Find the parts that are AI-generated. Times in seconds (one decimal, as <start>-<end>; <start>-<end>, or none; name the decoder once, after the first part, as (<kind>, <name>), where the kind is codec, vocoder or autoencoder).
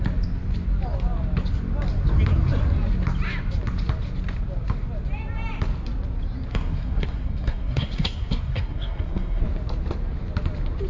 6.5-9.4 (codec, SNAC)